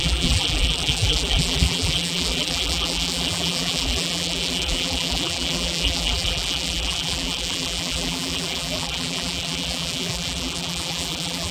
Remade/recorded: remade